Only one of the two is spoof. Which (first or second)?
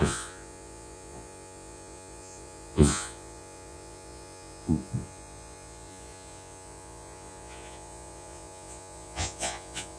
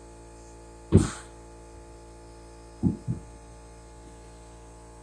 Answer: first